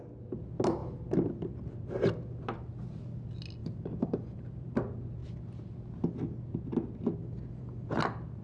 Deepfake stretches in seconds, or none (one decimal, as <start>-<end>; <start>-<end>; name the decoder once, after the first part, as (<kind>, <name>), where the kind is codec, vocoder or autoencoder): 3.6-4.8 (vocoder, BigVGAN v2); 7.2-7.9